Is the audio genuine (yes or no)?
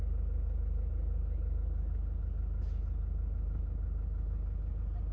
yes